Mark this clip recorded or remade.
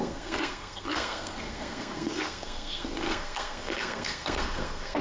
remade